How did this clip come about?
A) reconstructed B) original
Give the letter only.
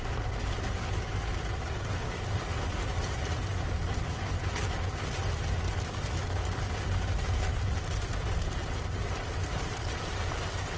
B